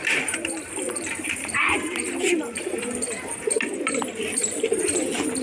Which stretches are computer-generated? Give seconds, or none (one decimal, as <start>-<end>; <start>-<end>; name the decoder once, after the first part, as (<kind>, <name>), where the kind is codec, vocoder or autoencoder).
0.0-2.7 (vocoder, BigVGAN v2)